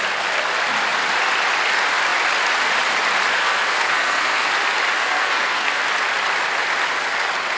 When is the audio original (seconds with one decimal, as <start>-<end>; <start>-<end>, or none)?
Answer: 0.0-3.4; 4.5-5.0; 5.8-7.6